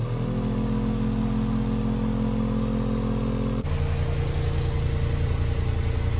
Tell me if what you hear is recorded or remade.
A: recorded